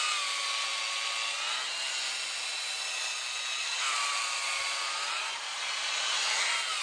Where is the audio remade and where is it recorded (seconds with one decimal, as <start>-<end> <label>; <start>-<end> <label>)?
0.0-3.6 recorded; 3.6-6.1 remade; 6.1-6.8 recorded